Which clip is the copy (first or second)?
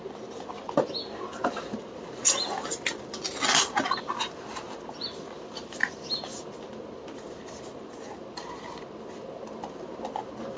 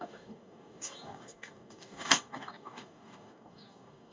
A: second